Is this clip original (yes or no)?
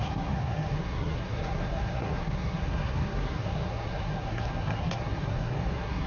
no